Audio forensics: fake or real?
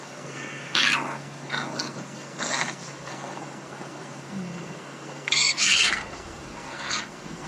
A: fake